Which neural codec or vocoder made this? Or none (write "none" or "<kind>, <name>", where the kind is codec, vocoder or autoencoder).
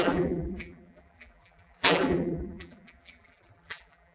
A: vocoder, BigVGAN v2